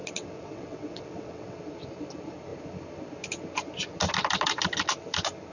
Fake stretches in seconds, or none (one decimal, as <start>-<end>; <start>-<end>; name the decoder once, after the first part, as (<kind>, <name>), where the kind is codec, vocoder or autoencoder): 0.0-1.6 (vocoder, WaveNeXt)